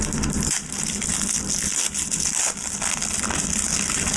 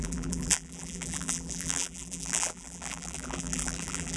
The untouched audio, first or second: first